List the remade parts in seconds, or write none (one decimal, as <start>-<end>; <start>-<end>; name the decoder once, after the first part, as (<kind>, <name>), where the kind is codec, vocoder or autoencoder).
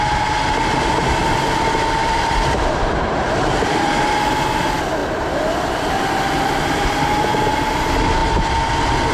2.0-3.9 (vocoder, BigVGAN v2)